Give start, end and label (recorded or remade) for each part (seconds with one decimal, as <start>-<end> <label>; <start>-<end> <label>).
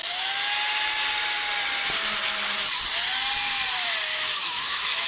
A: 0.0-4.1 recorded; 4.1-5.1 remade